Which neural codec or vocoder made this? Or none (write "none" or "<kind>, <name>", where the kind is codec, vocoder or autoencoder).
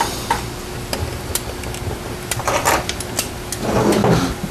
none